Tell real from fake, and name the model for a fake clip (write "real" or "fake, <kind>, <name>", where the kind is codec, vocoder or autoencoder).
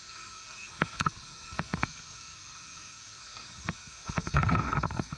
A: fake, codec, SNAC